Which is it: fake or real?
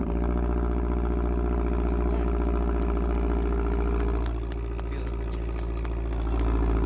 real